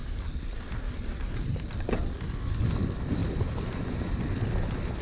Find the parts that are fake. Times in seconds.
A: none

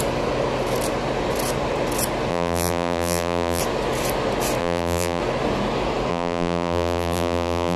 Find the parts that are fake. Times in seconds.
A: 2.3-3.6 (vocoder, BigVGAN v2); 4.6-5.2; 6.1-7.8